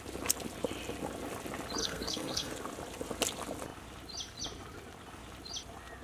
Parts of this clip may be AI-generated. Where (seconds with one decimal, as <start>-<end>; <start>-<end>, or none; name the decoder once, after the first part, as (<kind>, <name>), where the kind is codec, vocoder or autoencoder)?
1.8-2.5 (codec, SNAC)